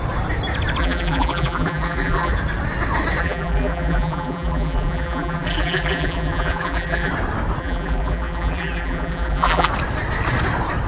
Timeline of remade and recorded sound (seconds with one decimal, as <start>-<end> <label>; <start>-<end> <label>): 0.0-0.8 recorded; 0.8-2.3 remade; 2.3-3.2 recorded; 3.2-7.1 remade; 7.1-7.6 recorded; 7.6-9.7 remade; 9.7-10.9 recorded